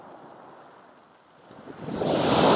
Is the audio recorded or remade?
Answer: recorded